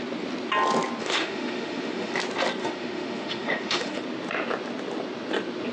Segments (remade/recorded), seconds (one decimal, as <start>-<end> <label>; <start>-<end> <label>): 0.0-1.0 recorded; 1.0-2.2 remade; 2.2-2.6 recorded; 2.6-4.0 remade; 4.0-5.7 recorded